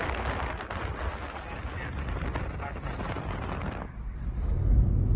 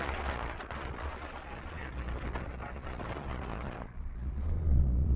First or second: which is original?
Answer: first